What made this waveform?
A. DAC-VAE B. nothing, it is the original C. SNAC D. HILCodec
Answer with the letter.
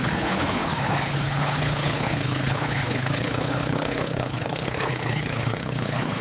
D